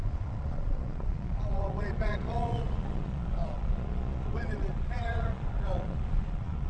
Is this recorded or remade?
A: remade